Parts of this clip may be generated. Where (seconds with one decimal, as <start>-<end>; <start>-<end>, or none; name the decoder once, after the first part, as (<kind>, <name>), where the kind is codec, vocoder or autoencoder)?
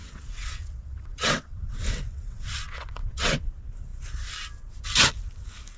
0.0-3.5 (vocoder, WaveNeXt)